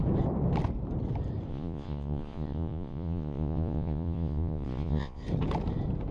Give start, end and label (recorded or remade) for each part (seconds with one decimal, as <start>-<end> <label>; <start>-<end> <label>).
0.0-1.5 recorded; 1.5-5.2 remade; 5.2-6.1 recorded